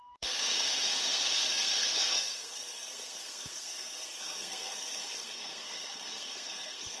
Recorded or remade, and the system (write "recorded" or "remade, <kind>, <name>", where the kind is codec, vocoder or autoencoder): remade, codec, SNAC